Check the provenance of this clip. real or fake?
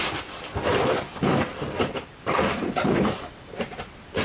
real